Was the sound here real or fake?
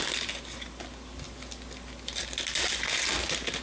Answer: real